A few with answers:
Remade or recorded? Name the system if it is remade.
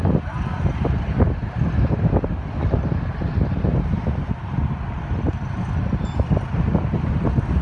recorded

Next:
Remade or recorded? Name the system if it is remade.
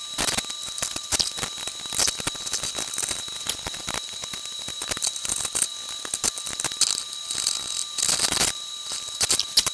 recorded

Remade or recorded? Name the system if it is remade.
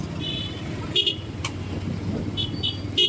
recorded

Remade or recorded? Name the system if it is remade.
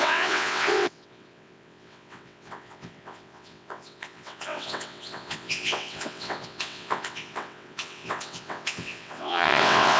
remade, vocoder, WaveNeXt